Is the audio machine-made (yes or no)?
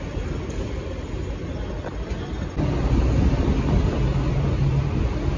no